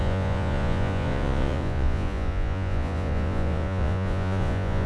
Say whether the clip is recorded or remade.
remade